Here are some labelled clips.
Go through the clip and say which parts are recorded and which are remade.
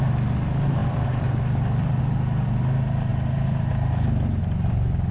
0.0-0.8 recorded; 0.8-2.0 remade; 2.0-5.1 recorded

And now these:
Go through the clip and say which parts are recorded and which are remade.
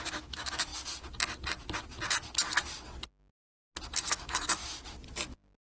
0.0-0.7 remade; 0.7-4.1 recorded; 4.1-4.6 remade; 4.6-5.8 recorded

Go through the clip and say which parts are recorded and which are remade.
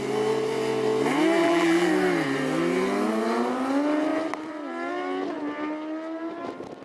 0.0-1.4 recorded; 1.4-1.9 remade; 1.9-6.8 recorded